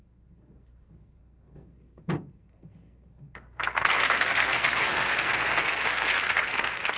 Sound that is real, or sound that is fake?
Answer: fake